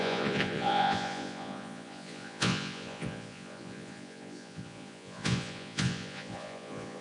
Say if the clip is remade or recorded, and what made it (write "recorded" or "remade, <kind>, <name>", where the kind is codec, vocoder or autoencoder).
remade, vocoder, Vocos